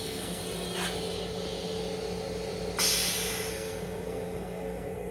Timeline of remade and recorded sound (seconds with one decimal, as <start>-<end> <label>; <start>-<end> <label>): 0.0-0.4 remade; 0.4-3.5 recorded; 3.5-5.1 remade